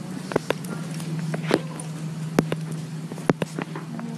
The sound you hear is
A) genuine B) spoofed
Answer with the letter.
A